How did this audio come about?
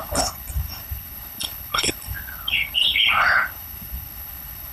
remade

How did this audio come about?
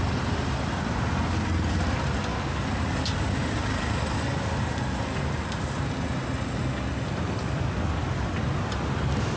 recorded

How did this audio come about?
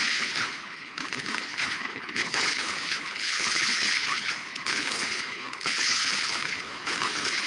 remade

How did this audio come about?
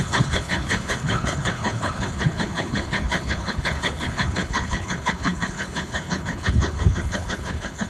remade